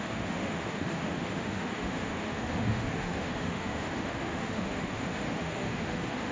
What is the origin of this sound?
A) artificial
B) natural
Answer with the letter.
A